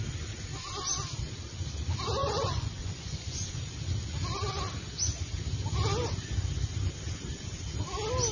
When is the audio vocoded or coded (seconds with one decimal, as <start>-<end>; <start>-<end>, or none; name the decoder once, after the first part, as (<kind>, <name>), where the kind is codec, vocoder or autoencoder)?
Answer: 2.2-3.6 (vocoder, Vocos)